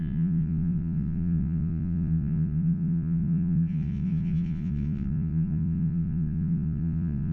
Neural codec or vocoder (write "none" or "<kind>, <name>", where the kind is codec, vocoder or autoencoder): vocoder, Vocos